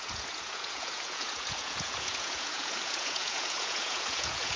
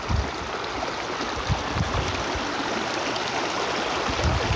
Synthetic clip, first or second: first